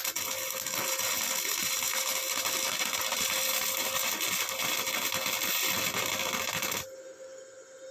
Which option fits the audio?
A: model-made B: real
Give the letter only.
B